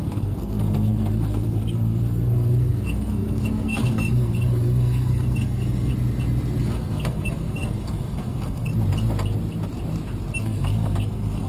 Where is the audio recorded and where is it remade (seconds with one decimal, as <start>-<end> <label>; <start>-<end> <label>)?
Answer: 0.0-5.9 remade; 5.9-6.6 recorded; 6.6-8.7 remade; 8.7-10.4 recorded; 10.4-11.5 remade